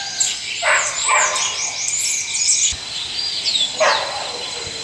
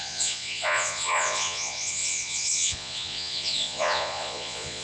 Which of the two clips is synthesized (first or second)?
second